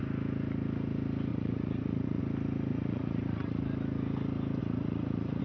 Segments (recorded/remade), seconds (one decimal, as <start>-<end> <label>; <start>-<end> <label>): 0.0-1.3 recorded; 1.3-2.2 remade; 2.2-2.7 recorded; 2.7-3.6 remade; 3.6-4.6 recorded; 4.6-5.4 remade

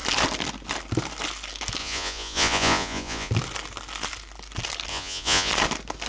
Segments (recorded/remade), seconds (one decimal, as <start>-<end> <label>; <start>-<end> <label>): 0.0-1.8 recorded; 1.8-3.3 remade; 3.3-4.9 recorded; 4.9-5.5 remade; 5.5-6.1 recorded

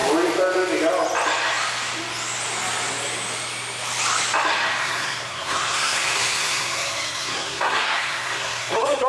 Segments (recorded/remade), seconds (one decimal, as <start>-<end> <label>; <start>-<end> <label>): 0.0-4.8 recorded; 4.8-9.1 remade